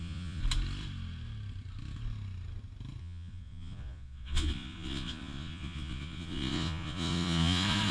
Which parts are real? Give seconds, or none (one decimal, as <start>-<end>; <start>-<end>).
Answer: 0.4-3.0